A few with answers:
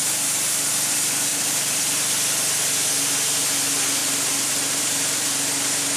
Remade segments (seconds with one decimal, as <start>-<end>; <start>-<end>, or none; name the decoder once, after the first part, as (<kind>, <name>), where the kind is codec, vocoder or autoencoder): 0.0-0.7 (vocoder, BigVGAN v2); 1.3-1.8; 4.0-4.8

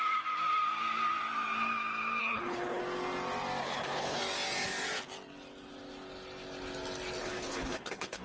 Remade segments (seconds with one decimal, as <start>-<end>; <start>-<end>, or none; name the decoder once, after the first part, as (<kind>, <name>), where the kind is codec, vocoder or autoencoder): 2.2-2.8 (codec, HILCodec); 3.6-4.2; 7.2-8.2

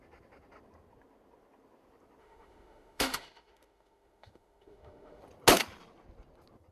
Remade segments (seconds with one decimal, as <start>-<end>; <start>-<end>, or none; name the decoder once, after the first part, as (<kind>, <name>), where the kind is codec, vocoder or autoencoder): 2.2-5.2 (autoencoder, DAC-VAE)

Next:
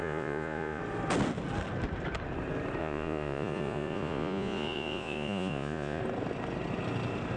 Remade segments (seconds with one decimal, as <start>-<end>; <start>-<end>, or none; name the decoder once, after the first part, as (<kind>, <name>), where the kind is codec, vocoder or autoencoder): 0.0-0.8 (vocoder, Vocos); 2.8-6.0

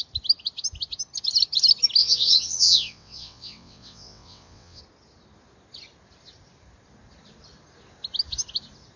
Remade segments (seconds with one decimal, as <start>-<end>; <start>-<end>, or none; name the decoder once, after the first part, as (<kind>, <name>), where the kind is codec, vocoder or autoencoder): 2.0-4.8 (vocoder, WaveNeXt)

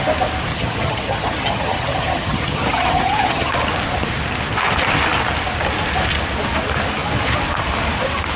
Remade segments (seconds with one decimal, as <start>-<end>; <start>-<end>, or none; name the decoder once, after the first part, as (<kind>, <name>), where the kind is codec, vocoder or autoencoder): 0.5-3.5 (vocoder, HiFi-GAN)